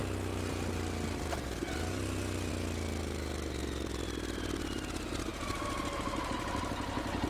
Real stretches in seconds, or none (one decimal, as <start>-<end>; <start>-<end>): 0.0-7.3